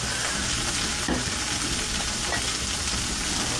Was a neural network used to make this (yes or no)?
no